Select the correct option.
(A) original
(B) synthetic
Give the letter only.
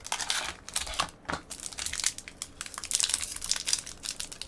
A